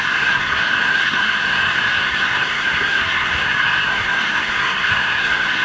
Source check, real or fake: fake